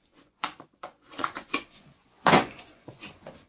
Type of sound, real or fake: fake